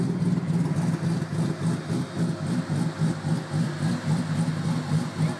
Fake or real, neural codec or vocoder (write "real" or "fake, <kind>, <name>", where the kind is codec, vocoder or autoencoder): real